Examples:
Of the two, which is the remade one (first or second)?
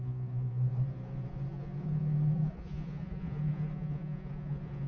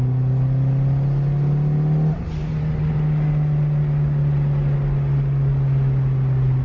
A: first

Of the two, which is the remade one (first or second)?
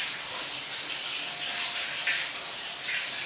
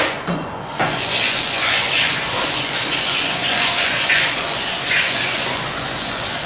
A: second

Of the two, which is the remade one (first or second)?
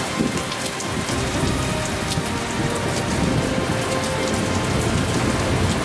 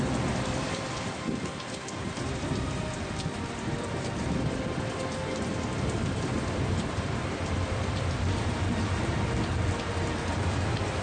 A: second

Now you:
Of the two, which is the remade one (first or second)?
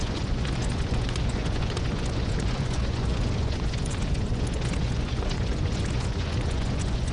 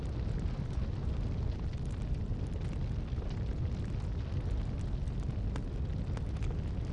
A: first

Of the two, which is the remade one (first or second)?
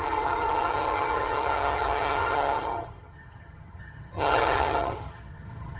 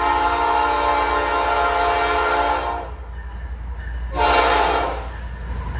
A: first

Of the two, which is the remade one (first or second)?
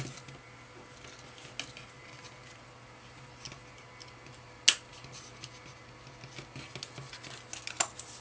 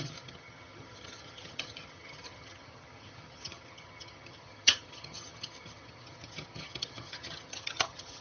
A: second